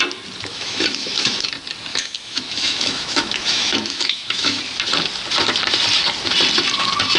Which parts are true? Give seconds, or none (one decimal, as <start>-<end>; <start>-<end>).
0.0-0.5; 1.5-1.9; 4.6-7.2